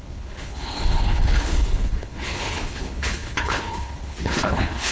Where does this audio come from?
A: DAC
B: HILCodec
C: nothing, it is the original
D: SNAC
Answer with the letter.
B